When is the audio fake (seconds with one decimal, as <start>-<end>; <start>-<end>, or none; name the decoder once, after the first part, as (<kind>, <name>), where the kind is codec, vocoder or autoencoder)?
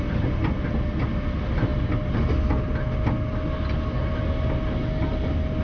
none